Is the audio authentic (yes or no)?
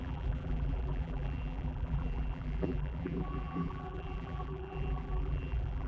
no